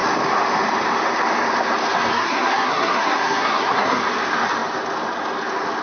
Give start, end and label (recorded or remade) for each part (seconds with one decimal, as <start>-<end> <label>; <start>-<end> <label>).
0.0-2.1 recorded; 2.1-4.0 remade; 4.0-5.8 recorded

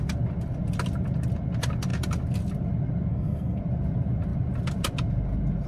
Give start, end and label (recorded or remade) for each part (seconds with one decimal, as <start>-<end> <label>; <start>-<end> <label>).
0.0-3.1 recorded; 3.1-3.6 remade; 3.6-5.7 recorded

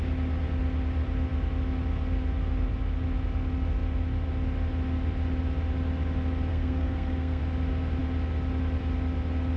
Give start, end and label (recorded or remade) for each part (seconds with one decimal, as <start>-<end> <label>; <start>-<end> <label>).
0.0-6.5 recorded; 6.5-7.4 remade; 7.4-9.6 recorded

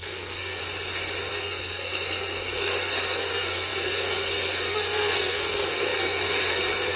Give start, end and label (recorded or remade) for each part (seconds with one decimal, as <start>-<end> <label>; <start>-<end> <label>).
0.0-0.6 remade; 0.6-1.3 recorded; 1.3-7.0 remade

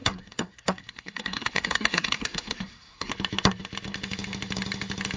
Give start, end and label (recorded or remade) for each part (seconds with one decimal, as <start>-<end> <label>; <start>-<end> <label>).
0.0-3.1 remade; 3.1-5.2 recorded

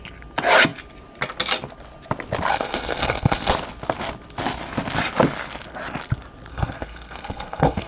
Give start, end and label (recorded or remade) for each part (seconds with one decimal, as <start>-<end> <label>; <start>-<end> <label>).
0.0-2.5 recorded; 2.5-3.5 remade; 3.5-6.5 recorded; 6.5-7.9 remade

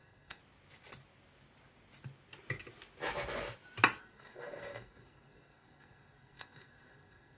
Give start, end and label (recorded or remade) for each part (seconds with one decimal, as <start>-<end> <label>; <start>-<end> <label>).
0.0-0.4 remade; 0.4-4.0 recorded; 4.0-7.4 remade